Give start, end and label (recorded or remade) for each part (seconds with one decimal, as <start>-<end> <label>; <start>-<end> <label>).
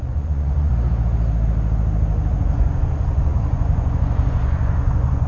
0.0-0.7 remade; 0.7-2.3 recorded; 2.3-5.3 remade